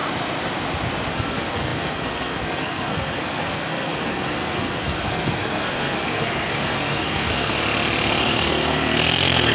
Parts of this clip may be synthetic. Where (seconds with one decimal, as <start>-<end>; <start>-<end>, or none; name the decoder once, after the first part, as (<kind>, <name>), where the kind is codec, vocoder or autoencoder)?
1.1-7.6 (codec, SNAC); 8.2-9.5